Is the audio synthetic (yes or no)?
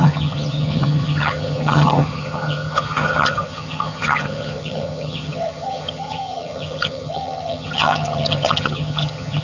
yes